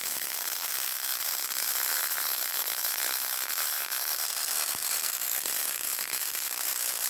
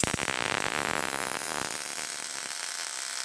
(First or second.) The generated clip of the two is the first